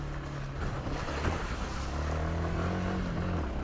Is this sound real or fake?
real